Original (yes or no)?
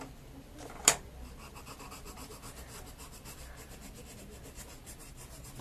yes